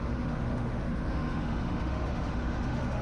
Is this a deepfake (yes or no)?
yes